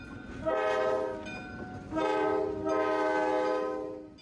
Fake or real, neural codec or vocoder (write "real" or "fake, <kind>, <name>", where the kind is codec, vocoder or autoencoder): real